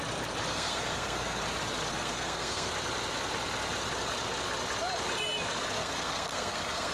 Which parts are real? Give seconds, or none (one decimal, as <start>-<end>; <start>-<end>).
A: 0.0-0.5; 1.4-1.9; 2.7-5.8